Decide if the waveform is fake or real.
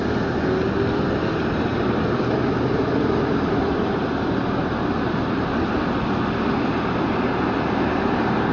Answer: real